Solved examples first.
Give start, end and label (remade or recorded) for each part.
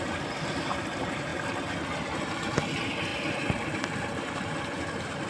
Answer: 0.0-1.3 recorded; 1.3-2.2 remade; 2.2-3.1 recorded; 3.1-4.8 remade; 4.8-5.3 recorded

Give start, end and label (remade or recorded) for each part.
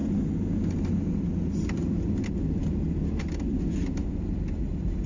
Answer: 0.0-5.1 recorded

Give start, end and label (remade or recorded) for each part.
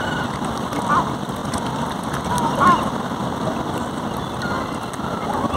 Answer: 0.0-5.6 recorded